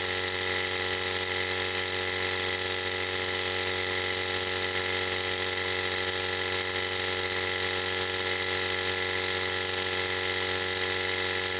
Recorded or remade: recorded